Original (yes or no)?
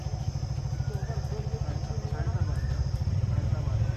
yes